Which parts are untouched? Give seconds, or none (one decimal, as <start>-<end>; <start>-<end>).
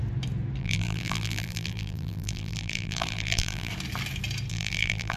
0.0-0.6; 3.7-4.5